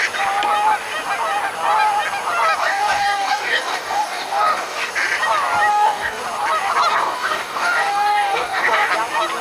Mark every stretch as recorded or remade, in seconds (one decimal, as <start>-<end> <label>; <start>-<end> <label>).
0.0-2.6 recorded; 2.6-4.9 remade; 4.9-5.7 recorded; 5.7-6.2 remade; 6.2-6.9 recorded; 6.9-8.9 remade; 8.9-9.4 recorded